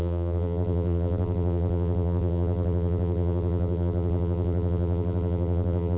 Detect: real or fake fake